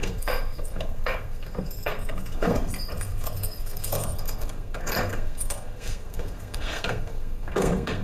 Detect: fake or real fake